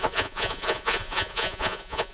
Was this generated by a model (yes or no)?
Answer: yes